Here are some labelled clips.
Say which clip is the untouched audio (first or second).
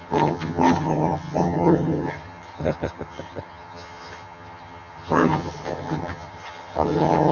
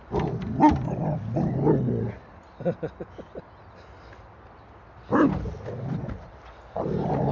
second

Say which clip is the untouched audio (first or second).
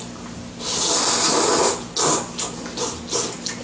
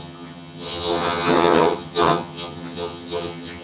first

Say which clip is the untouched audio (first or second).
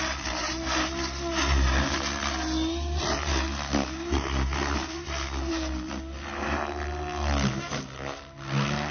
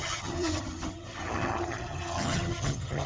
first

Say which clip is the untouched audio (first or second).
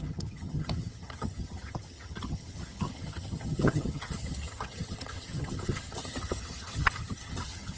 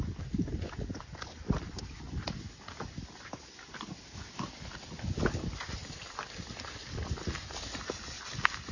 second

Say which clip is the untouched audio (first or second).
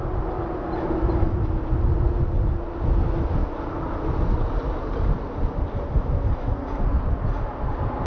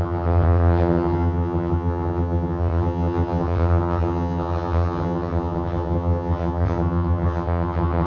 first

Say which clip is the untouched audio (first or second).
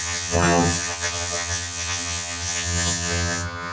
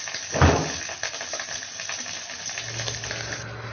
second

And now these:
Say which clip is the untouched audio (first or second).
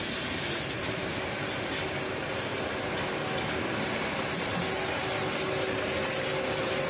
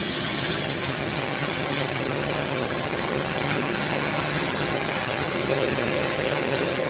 first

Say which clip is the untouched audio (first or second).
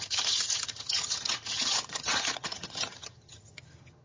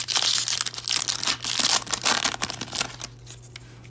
second